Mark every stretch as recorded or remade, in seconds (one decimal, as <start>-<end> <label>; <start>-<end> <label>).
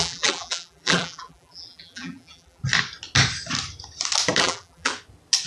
0.0-2.6 remade; 2.6-4.4 recorded; 4.4-4.9 remade; 4.9-5.5 recorded